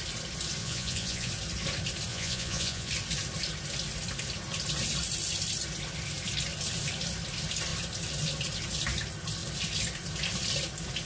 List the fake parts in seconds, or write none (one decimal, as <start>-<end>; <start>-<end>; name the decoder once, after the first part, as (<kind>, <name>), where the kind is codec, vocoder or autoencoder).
0.6-1.3 (vocoder, Vocos); 2.1-2.9